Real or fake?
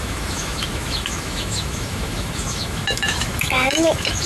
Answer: fake